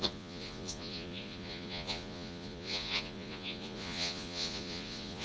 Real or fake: fake